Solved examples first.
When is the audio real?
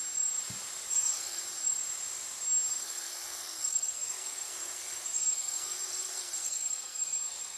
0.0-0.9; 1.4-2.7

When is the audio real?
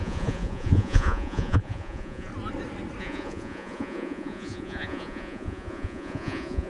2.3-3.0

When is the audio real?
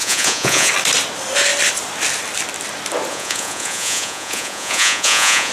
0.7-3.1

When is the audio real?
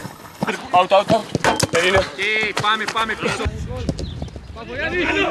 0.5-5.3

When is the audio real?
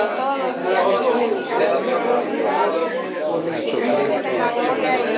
0.0-0.6; 1.6-2.8; 4.2-5.2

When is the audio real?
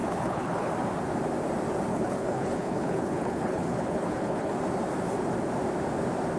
0.7-1.9; 4.5-6.4